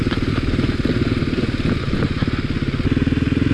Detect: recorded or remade recorded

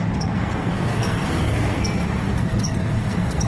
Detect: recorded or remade remade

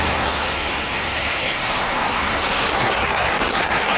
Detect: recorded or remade remade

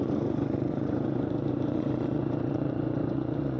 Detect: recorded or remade remade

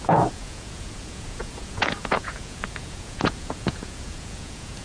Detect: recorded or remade remade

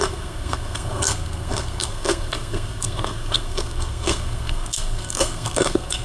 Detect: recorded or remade remade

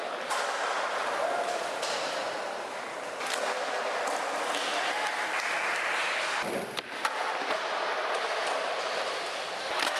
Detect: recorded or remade recorded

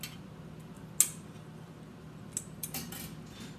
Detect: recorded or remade recorded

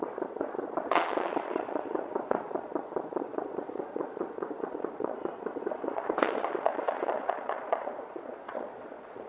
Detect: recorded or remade remade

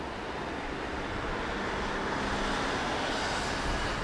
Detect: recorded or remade recorded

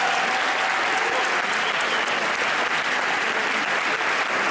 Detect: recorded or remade recorded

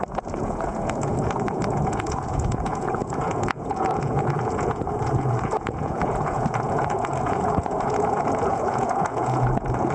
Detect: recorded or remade remade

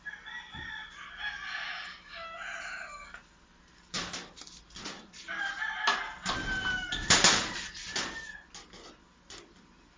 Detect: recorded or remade recorded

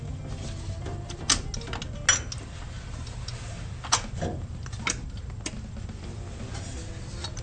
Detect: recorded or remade recorded